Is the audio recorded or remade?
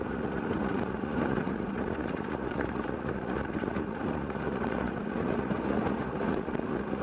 remade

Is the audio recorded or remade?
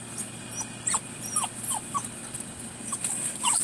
recorded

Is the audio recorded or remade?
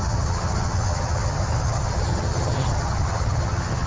remade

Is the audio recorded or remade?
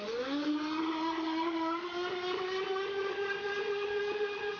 recorded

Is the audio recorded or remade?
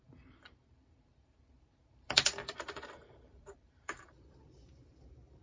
remade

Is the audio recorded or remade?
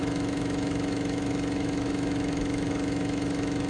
remade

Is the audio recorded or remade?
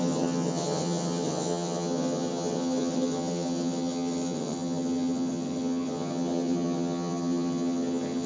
remade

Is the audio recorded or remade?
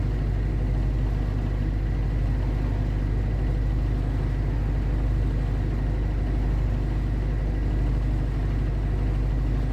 recorded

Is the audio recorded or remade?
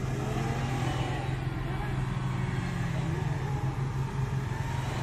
recorded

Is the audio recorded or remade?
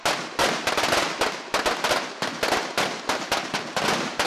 recorded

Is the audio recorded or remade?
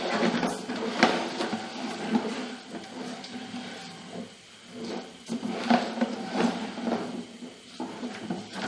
remade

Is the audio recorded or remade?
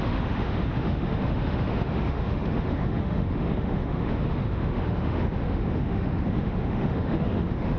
remade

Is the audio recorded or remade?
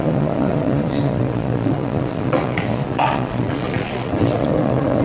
remade